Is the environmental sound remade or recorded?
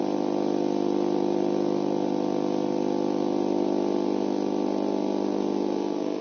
recorded